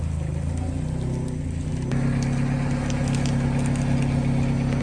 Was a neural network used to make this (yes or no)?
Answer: no